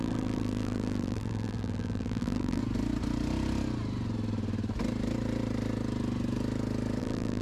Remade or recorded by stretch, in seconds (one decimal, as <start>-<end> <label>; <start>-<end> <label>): 0.0-2.6 remade; 2.6-7.0 recorded; 7.0-7.4 remade